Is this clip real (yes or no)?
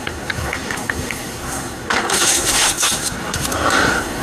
no